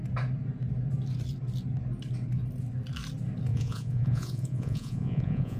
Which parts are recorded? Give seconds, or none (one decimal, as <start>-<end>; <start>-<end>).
0.0-3.5